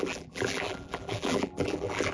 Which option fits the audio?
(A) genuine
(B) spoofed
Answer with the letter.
B